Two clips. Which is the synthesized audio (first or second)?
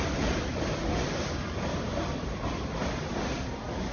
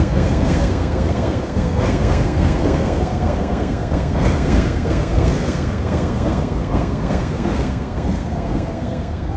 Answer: second